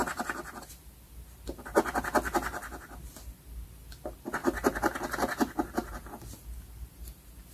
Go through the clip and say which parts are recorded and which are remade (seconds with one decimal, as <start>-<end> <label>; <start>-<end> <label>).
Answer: 0.0-7.5 recorded